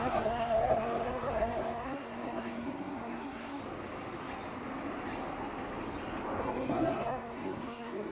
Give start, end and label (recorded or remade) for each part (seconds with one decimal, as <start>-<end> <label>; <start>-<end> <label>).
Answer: 0.0-3.6 remade; 3.6-6.4 recorded; 6.4-8.1 remade